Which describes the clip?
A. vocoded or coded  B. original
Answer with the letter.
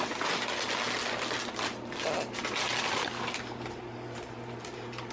B